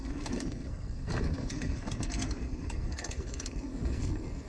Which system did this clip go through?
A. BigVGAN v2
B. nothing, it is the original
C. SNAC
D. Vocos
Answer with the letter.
C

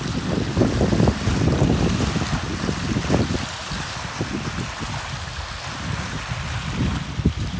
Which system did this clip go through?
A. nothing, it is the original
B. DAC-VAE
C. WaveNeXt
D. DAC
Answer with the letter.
A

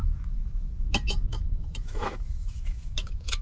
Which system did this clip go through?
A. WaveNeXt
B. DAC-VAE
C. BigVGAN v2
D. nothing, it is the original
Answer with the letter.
B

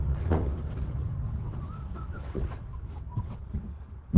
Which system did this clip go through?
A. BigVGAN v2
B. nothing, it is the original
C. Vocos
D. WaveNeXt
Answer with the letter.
D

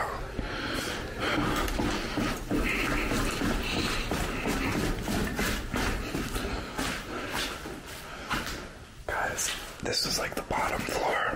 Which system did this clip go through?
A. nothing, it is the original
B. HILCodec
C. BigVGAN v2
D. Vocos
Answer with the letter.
A